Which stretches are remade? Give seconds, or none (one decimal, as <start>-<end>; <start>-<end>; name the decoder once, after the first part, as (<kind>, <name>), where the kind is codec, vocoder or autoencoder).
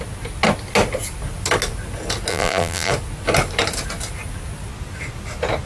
2.3-2.9 (vocoder, BigVGAN v2)